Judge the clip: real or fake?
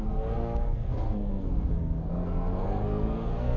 fake